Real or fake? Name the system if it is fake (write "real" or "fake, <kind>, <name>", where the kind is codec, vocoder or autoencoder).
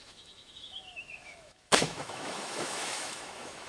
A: fake, autoencoder, DAC-VAE